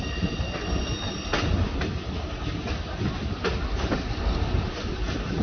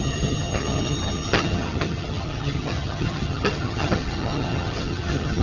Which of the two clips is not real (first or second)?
second